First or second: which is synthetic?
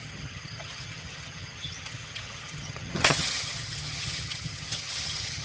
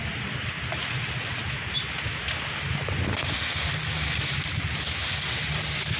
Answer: first